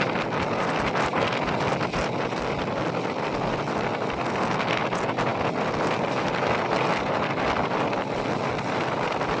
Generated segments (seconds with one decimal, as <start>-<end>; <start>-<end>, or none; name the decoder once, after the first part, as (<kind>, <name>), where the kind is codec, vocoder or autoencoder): none